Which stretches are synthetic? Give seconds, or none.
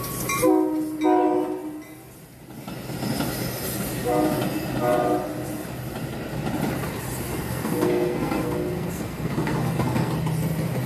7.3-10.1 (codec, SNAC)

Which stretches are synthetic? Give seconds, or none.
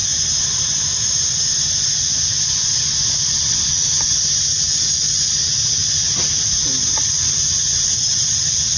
none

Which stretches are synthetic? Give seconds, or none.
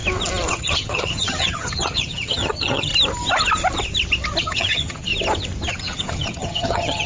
0.5-2.9 (vocoder, HiFi-GAN); 4.4-5.1; 5.7-7.1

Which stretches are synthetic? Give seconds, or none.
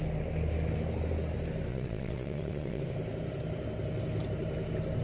1.7-2.8 (vocoder, Vocos)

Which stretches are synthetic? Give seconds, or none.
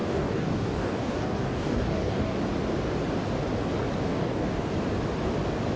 0.0-2.4 (codec, DAC); 4.1-4.7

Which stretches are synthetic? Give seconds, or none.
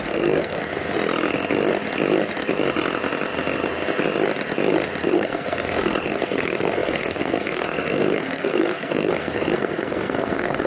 0.0-0.6 (codec, SNAC); 5.1-10.7